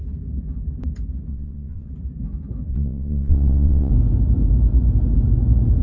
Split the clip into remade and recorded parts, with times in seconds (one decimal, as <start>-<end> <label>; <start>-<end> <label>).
0.0-1.3 recorded; 1.3-1.9 remade; 1.9-2.7 recorded; 2.7-3.9 remade; 3.9-5.8 recorded